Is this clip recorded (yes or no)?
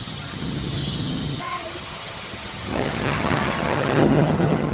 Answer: no